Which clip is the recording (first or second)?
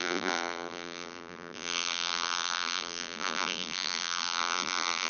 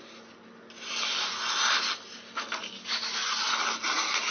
second